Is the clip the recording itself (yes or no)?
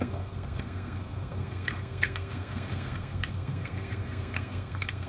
no